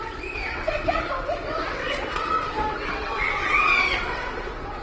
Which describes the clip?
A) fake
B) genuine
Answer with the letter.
A